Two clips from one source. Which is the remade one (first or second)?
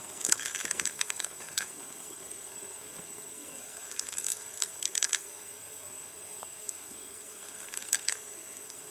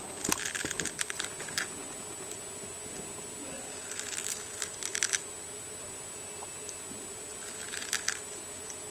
first